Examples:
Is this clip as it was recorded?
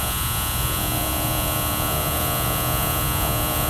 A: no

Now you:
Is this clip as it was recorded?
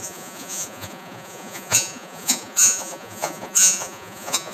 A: no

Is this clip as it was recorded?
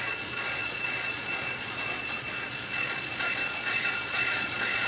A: no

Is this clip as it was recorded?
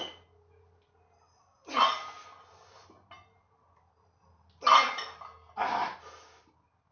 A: yes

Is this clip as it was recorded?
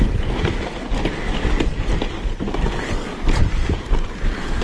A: yes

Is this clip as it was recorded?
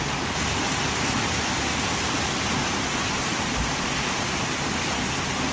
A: yes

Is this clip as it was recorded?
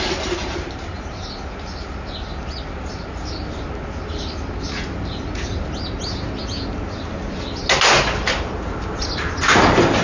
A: yes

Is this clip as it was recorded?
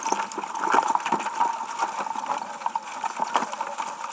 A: yes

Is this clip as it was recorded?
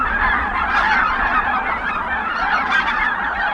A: no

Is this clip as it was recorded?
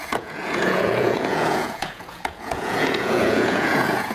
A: no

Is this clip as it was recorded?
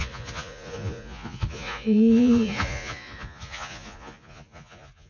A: no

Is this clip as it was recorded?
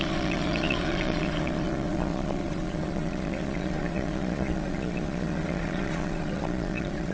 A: no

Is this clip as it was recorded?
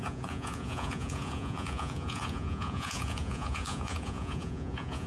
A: no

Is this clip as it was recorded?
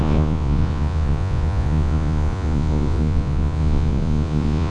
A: no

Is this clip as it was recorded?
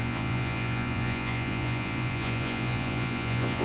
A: no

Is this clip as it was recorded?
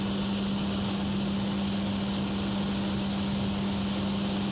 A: yes